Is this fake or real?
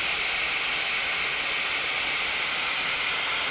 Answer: real